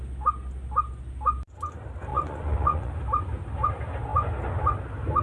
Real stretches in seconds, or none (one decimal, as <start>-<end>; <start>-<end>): 0.0-2.1; 2.9-5.2